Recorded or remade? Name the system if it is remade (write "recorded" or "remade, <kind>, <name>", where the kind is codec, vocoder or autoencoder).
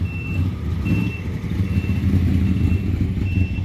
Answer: recorded